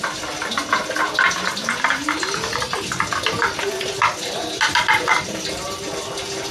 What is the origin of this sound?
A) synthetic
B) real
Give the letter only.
B